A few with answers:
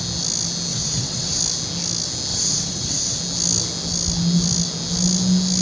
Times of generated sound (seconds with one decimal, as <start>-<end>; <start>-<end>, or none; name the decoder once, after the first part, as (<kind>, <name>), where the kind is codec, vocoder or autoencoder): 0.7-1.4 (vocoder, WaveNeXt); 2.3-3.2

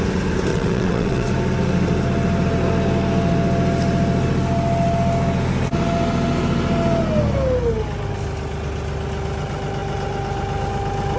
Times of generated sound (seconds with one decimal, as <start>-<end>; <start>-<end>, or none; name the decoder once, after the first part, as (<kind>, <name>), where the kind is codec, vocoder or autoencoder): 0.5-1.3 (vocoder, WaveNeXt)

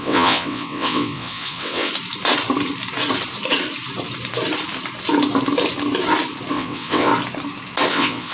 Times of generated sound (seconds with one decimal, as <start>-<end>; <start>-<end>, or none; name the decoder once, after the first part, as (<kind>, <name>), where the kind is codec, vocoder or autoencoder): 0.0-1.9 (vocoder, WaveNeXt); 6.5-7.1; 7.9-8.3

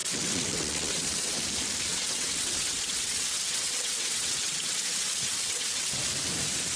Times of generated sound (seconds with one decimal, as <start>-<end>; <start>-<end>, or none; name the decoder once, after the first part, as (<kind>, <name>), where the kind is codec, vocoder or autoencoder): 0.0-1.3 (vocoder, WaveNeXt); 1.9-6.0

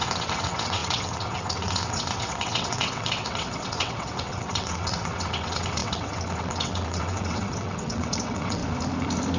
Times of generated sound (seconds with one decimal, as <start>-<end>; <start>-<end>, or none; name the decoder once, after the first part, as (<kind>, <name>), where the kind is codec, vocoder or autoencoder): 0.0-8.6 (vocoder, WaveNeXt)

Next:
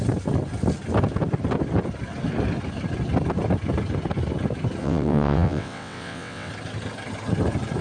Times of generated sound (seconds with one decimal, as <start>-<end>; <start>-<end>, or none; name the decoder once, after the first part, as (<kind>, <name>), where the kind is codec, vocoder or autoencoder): 4.8-6.5 (vocoder, WaveNeXt)

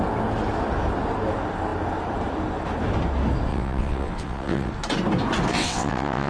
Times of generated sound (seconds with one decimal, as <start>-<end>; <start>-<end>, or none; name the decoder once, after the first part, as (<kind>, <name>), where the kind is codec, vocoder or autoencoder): 3.5-4.7 (vocoder, WaveNeXt); 5.5-6.3

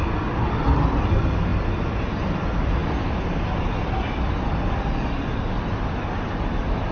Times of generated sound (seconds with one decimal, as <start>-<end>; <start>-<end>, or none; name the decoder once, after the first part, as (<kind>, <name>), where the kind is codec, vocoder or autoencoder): none